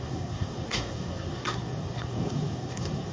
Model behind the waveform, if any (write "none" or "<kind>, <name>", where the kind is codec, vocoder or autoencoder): codec, SNAC